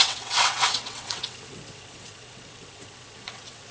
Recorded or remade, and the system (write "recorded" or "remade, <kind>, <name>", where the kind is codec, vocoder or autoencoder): remade, vocoder, WaveNeXt